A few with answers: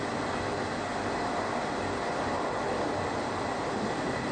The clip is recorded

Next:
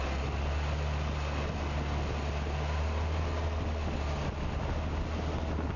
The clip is recorded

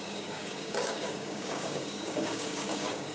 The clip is remade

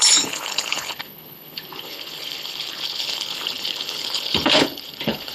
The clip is remade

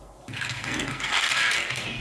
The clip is remade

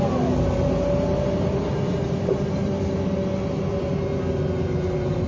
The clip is recorded